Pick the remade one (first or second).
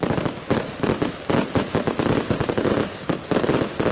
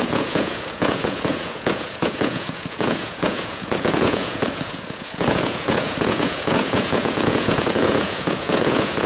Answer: second